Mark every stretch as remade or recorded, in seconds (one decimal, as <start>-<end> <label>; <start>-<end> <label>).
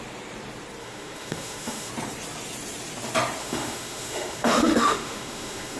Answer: 0.0-0.8 recorded; 0.8-1.9 remade; 1.9-3.4 recorded; 3.4-5.8 remade